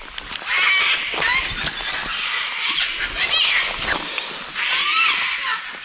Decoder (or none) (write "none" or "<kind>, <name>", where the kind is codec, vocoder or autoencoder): none